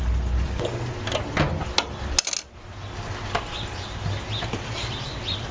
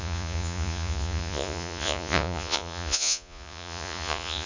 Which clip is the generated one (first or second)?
second